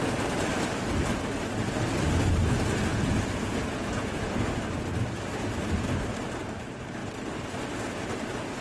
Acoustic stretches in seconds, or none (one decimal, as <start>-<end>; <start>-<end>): 0.0-2.9; 4.3-8.6